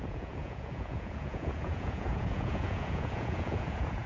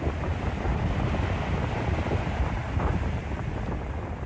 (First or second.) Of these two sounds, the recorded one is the second